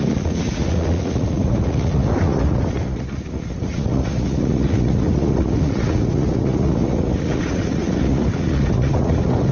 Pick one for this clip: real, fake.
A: fake